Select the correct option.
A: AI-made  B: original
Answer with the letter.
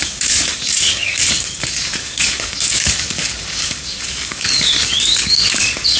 A